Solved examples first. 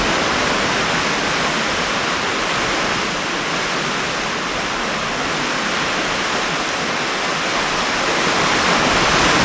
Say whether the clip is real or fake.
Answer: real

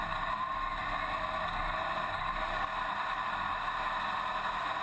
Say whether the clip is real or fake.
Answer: real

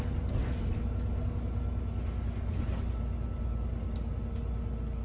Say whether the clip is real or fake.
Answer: real